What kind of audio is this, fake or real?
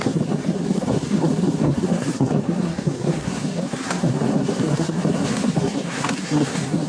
fake